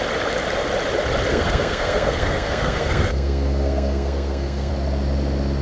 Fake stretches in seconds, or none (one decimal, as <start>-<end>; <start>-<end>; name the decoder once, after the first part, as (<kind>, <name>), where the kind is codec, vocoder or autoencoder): 1.3-4.7 (codec, SNAC)